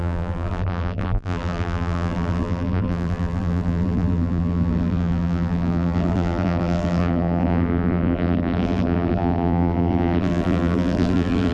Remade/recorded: remade